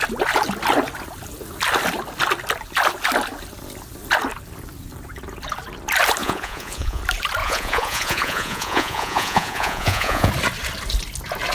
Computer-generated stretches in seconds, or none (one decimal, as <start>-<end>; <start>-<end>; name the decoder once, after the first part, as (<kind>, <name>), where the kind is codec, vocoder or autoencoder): 6.2-7.0 (vocoder, Vocos); 7.4-10.3